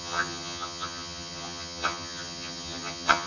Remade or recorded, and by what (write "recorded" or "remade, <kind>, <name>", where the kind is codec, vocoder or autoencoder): remade, vocoder, HiFi-GAN